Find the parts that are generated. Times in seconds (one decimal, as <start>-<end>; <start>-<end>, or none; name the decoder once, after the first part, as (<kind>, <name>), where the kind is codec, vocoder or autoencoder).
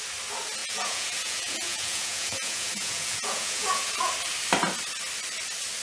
0.6-4.1 (vocoder, Vocos)